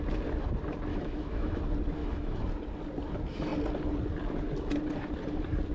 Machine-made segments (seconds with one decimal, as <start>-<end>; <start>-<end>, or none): 0.9-1.6; 2.0-2.5

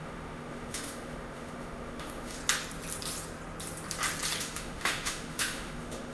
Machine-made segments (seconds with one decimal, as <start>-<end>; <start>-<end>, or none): 0.0-2.4; 4.4-6.1